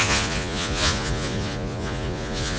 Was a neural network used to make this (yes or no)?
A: yes